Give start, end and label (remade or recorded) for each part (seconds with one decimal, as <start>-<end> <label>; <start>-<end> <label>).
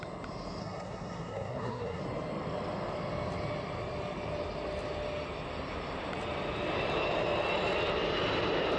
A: 0.0-0.6 recorded; 0.6-2.0 remade; 2.0-8.8 recorded